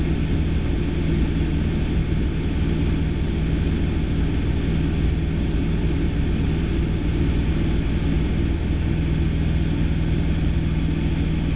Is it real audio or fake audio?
real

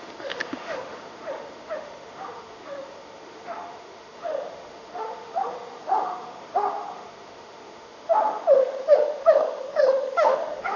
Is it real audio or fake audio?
fake